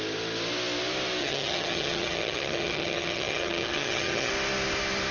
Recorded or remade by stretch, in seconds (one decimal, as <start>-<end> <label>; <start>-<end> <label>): 0.0-1.2 recorded; 1.2-4.3 remade; 4.3-5.1 recorded